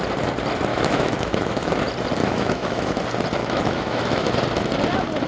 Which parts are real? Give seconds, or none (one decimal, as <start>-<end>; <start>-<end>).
0.0-0.7; 1.8-2.2; 3.0-3.4; 4.3-5.3

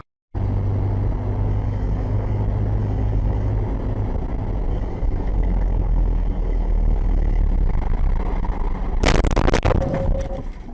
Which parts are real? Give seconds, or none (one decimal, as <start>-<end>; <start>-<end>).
0.0-1.5; 2.4-2.8; 3.5-4.7; 7.4-10.7

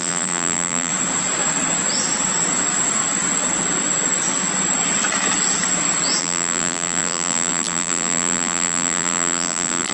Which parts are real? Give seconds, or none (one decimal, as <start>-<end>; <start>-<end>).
0.9-6.2

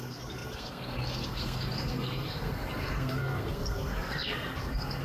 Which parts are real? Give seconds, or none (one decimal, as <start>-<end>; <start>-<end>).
none

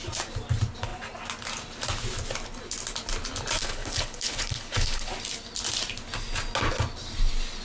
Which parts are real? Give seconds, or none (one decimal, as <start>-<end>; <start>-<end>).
0.0-3.6; 5.1-7.6

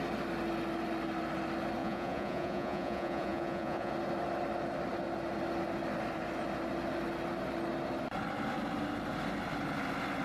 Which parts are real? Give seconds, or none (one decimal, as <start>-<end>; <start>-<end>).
0.0-1.8; 3.9-10.2

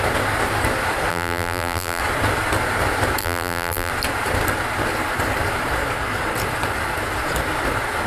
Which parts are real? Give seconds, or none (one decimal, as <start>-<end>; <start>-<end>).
0.0-1.1; 2.0-3.2; 3.9-8.1